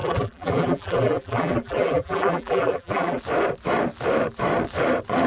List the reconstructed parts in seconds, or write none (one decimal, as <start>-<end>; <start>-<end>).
0.0-3.2